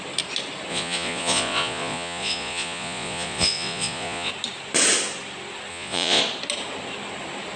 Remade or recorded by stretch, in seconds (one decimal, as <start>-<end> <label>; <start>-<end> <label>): 0.0-0.7 recorded; 0.7-4.3 remade; 4.3-5.7 recorded; 5.7-6.2 remade; 6.2-7.6 recorded